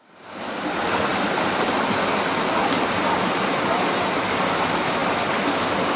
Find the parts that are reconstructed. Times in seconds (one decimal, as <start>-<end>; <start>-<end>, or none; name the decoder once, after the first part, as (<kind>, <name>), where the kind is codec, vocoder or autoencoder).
none